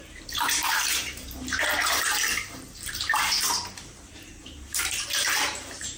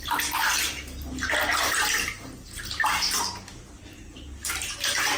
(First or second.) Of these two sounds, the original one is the second